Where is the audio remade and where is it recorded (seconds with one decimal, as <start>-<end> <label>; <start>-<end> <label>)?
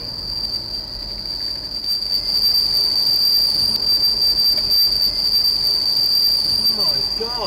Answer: 0.0-7.5 recorded